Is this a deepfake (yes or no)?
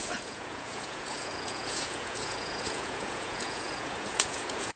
yes